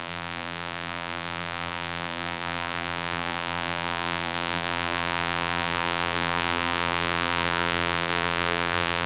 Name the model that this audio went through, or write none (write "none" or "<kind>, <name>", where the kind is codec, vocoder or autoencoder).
vocoder, BigVGAN v2